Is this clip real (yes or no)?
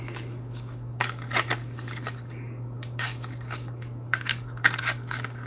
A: no